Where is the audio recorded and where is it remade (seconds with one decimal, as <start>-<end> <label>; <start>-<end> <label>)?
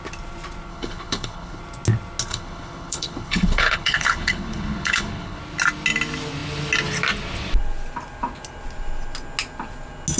0.0-0.7 recorded; 0.7-1.6 remade; 1.6-2.3 recorded; 2.3-5.4 remade; 5.4-10.2 recorded